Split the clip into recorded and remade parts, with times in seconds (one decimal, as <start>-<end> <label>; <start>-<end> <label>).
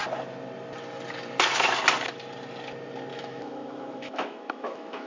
0.0-3.1 recorded; 3.1-5.1 remade